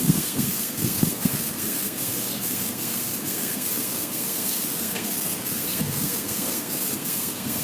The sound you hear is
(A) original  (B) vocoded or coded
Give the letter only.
B